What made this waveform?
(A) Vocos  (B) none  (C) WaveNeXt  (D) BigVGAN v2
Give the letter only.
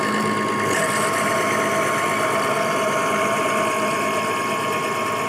B